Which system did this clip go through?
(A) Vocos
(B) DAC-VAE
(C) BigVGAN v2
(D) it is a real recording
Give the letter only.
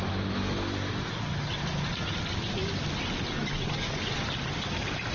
D